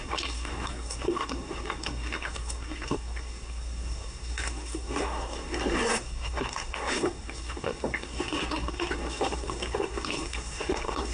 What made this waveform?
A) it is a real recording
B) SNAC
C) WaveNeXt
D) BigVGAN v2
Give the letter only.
B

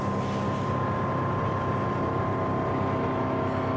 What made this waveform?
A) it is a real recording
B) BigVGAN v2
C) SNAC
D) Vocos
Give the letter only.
A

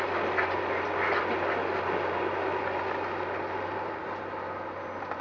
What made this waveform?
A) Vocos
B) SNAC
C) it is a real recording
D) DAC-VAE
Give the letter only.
C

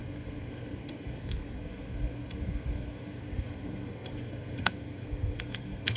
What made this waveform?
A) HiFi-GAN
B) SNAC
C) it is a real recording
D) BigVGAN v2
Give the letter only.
B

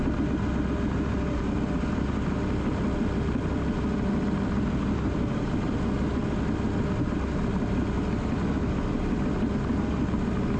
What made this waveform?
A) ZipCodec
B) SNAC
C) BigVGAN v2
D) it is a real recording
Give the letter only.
D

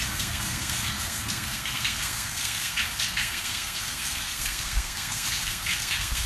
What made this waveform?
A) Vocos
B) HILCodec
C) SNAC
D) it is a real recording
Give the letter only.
C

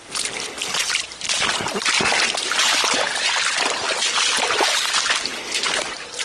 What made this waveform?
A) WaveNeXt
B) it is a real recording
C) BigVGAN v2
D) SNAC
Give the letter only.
B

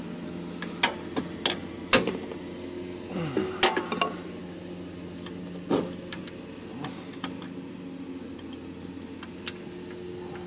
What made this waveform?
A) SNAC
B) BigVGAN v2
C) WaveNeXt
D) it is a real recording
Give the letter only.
D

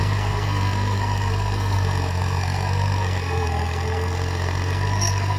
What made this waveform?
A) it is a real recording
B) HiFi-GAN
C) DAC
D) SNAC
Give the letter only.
D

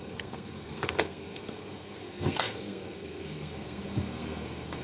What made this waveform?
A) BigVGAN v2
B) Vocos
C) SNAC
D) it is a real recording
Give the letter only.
C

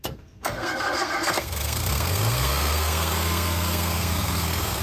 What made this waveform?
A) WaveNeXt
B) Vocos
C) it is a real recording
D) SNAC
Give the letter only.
D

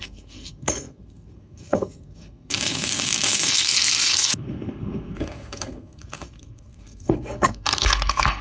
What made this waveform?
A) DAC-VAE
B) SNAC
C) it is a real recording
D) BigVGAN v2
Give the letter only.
B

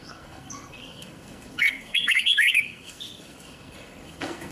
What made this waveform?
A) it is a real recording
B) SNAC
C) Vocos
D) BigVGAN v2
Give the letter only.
B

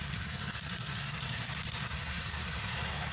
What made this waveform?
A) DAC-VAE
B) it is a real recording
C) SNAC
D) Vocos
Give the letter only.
C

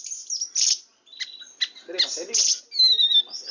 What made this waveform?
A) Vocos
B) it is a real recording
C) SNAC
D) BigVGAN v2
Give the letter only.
B